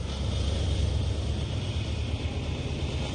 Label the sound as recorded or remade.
recorded